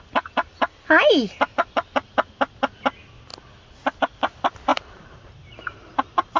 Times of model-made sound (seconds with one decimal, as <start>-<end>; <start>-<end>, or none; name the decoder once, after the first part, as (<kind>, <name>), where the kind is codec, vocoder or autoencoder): 4.7-6.4 (vocoder, BigVGAN v2)